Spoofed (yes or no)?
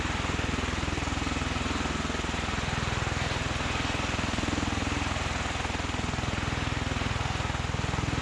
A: no